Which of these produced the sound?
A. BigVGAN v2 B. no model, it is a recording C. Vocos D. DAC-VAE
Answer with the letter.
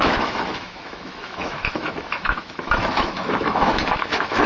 D